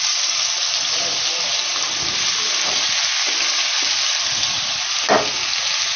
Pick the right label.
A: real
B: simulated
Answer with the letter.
A